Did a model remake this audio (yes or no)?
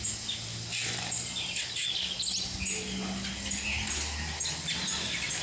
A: no